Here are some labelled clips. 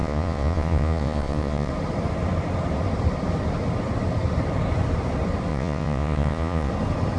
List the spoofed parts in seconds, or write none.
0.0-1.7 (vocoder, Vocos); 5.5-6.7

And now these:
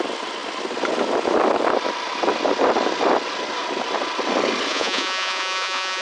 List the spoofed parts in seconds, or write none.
4.7-6.0 (vocoder, Vocos)

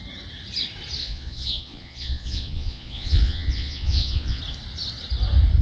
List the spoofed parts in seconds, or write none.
1.0-4.4 (vocoder, Vocos)